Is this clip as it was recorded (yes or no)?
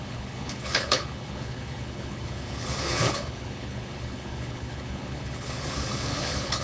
no